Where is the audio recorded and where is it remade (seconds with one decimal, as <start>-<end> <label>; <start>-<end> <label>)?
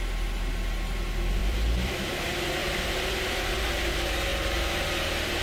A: 0.0-1.4 recorded; 1.4-2.1 remade; 2.1-2.6 recorded; 2.6-3.5 remade; 3.5-4.3 recorded; 4.3-5.4 remade